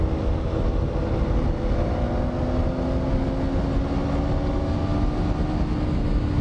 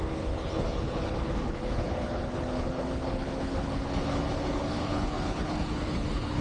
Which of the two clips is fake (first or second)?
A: second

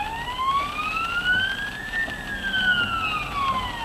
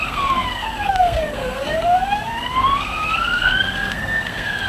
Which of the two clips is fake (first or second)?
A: second